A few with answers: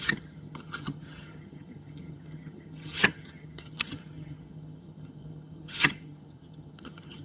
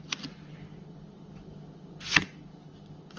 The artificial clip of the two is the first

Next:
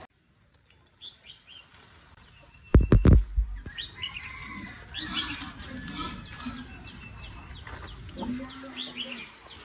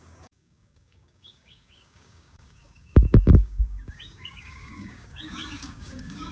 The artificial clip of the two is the second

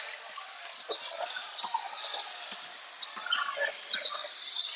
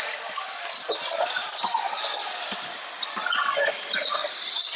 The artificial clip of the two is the second